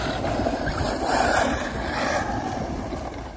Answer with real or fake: real